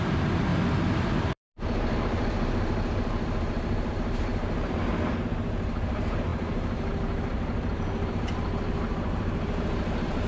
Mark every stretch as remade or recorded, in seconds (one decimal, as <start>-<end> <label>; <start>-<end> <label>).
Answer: 0.0-0.5 remade; 0.5-1.0 recorded; 1.0-4.9 remade; 4.9-5.4 recorded; 5.4-10.3 remade